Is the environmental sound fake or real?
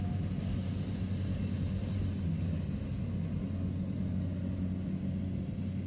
real